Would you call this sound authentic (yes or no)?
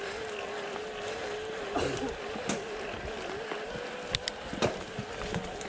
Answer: yes